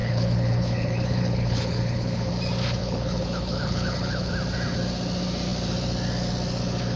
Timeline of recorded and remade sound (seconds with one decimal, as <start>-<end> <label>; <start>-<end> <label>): 0.0-2.3 remade; 2.3-2.8 recorded; 2.8-4.3 remade; 4.3-7.0 recorded